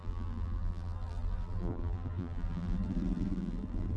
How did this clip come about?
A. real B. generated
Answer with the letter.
B